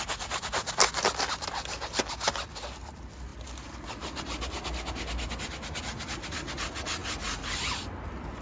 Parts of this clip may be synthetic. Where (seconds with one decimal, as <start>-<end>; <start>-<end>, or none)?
none